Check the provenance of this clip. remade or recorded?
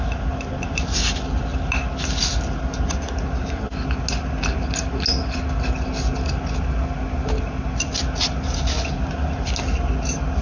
recorded